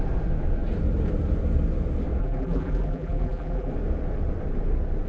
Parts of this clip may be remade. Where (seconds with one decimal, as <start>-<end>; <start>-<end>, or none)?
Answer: 2.2-3.7